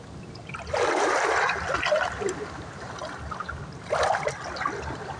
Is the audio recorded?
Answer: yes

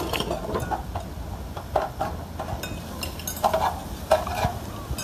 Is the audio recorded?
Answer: yes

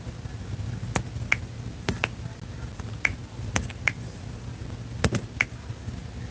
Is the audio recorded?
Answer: yes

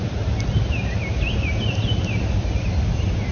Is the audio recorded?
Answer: yes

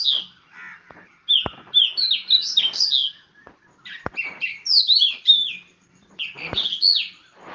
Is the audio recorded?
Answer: yes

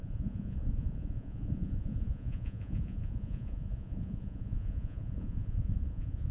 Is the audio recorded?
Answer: no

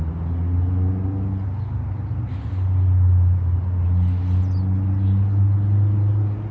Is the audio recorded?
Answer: yes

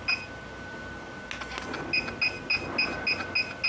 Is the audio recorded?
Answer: yes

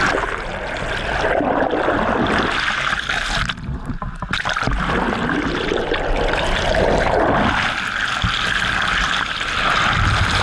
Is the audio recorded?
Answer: yes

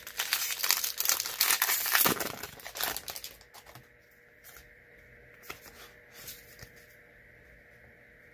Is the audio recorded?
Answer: yes